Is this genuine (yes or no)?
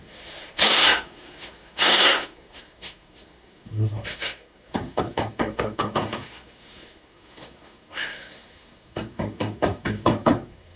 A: no